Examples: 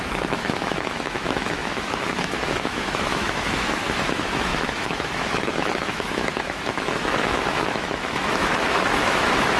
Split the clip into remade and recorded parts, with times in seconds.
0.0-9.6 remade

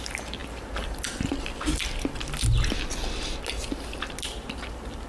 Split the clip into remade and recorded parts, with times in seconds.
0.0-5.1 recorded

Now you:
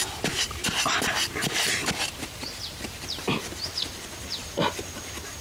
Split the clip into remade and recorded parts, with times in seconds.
0.0-3.2 remade; 3.2-5.4 recorded

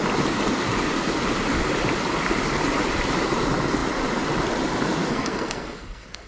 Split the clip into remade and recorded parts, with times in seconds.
0.0-5.1 recorded; 5.1-6.3 remade